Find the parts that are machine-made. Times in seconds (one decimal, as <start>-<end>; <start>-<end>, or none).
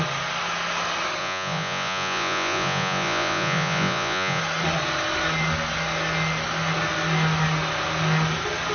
1.2-4.4